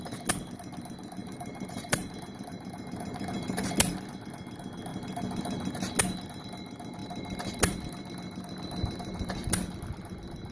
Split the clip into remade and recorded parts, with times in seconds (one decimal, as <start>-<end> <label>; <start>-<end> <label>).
0.0-1.2 recorded; 1.2-3.7 remade; 3.7-10.5 recorded